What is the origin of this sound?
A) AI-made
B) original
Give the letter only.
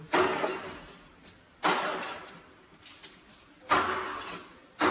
A